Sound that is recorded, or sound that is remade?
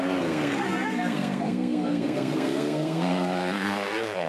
remade